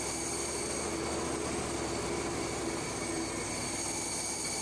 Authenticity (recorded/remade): recorded